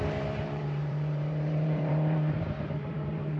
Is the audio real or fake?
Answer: fake